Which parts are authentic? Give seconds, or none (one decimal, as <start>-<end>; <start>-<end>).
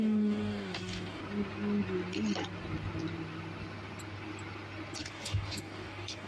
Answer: 1.2-5.0